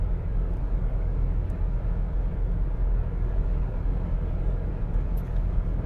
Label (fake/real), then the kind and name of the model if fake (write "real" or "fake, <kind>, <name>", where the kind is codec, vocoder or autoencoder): fake, codec, DAC